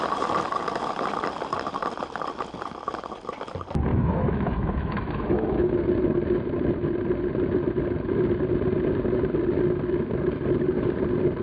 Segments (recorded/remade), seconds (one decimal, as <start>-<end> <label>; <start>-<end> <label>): 0.0-3.9 recorded; 3.9-5.8 remade; 5.8-11.4 recorded